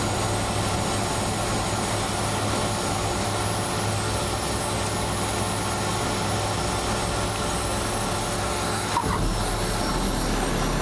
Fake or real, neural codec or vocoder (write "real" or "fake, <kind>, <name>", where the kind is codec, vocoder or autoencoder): real